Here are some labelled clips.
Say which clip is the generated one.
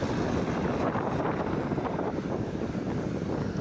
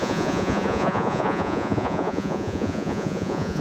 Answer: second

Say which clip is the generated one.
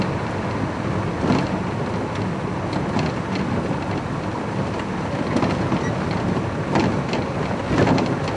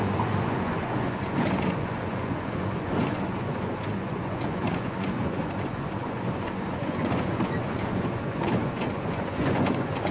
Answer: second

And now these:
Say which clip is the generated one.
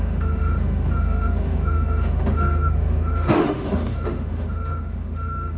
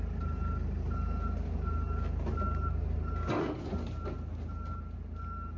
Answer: first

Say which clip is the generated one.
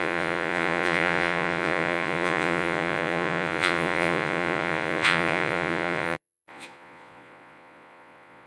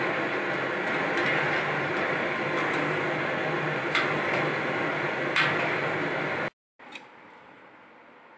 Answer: first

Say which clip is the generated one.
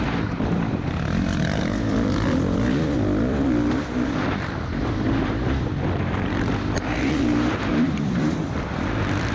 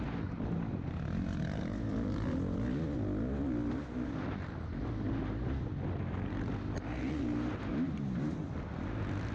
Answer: first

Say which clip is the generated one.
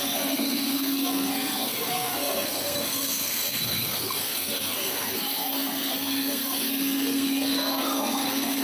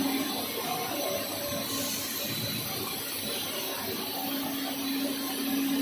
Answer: first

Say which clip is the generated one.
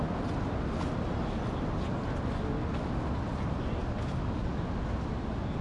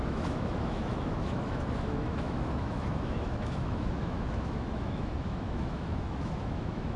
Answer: second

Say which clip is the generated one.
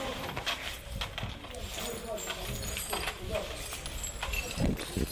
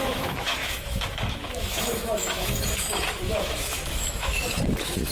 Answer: second